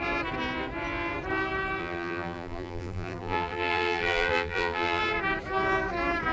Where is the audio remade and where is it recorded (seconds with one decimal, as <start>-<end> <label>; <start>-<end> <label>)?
0.0-1.8 recorded; 1.8-5.0 remade; 5.0-6.3 recorded

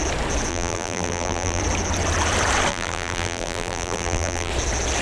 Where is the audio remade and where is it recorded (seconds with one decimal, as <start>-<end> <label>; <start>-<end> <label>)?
0.0-0.5 recorded; 0.5-1.6 remade; 1.6-2.7 recorded; 2.7-4.5 remade; 4.5-5.0 recorded

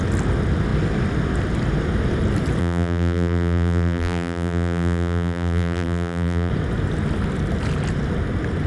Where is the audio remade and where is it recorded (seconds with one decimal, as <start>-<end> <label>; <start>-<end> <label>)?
0.0-2.6 recorded; 2.6-6.5 remade; 6.5-8.7 recorded